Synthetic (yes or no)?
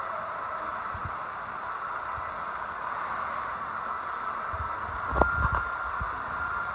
no